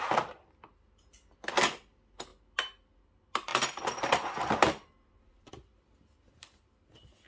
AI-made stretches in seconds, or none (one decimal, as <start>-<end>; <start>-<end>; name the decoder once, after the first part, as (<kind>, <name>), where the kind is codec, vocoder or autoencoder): none